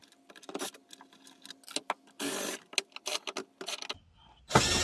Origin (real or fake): real